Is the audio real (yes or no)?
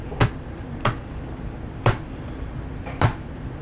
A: no